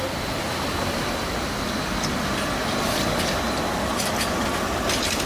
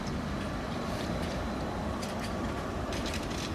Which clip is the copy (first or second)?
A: second